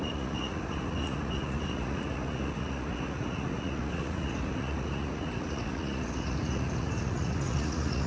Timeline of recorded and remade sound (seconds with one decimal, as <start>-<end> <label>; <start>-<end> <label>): 0.0-8.1 remade